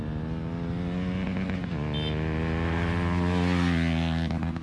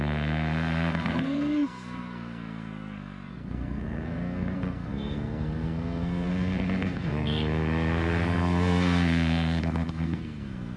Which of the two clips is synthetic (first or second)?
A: second